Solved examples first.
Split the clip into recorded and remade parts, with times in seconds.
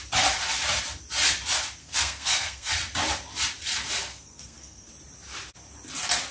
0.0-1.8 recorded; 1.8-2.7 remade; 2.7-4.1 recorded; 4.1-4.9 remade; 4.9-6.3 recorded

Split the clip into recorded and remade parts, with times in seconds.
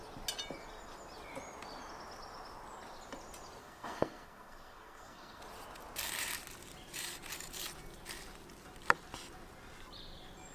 0.0-3.6 recorded; 3.6-5.4 remade; 5.4-10.5 recorded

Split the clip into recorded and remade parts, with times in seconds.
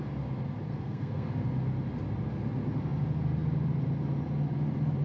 0.0-0.7 recorded; 0.7-1.3 remade; 1.3-5.0 recorded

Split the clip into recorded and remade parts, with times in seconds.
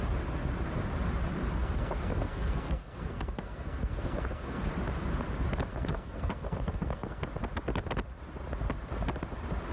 0.0-1.6 recorded; 1.6-4.7 remade; 4.7-5.7 recorded; 5.7-7.2 remade; 7.2-9.7 recorded